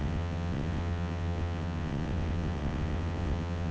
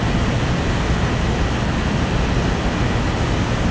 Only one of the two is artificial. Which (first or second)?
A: first